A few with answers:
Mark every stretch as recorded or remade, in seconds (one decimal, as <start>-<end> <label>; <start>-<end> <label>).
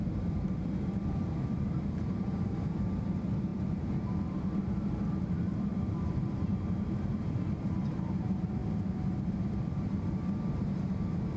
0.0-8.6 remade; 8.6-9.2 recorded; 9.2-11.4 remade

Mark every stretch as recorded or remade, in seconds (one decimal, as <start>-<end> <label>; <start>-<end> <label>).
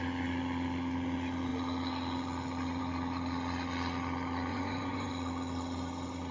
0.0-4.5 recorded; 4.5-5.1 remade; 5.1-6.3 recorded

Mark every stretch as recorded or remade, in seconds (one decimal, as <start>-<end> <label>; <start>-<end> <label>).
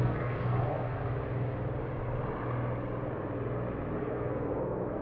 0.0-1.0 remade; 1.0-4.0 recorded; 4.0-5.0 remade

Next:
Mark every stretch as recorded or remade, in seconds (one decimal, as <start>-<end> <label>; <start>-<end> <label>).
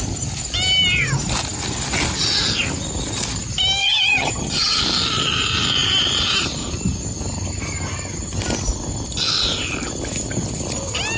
0.0-3.8 recorded; 3.8-4.8 remade; 4.8-11.2 recorded